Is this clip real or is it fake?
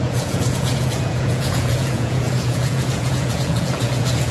fake